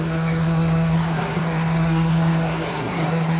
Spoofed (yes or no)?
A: yes